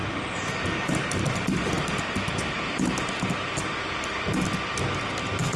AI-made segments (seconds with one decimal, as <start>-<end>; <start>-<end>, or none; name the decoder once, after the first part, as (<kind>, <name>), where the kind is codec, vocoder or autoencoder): 0.0-2.9 (vocoder, BigVGAN v2)